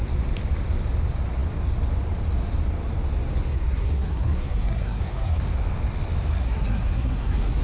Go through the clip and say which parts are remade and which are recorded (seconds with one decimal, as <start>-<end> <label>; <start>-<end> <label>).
0.0-3.5 recorded; 3.5-5.4 remade; 5.4-6.3 recorded; 6.3-7.6 remade